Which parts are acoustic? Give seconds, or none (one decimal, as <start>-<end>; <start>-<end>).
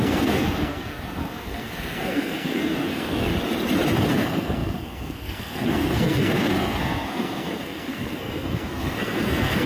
3.3-4.1